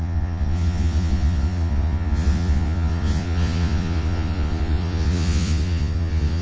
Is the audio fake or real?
fake